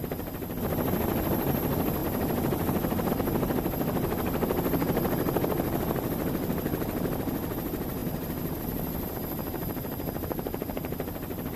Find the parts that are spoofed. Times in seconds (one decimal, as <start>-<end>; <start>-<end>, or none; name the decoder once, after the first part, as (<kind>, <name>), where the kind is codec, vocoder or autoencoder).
none